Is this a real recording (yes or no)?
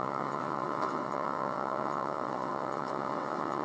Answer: no